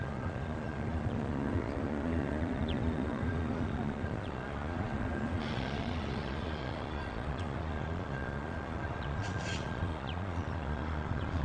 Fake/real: fake